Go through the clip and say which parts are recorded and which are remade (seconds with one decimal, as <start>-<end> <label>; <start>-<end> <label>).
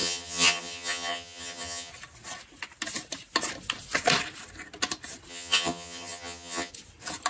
0.0-1.9 remade; 1.9-5.3 recorded; 5.3-6.7 remade; 6.7-7.3 recorded